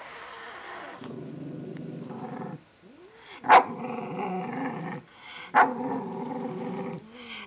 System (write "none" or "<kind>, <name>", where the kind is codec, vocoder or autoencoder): none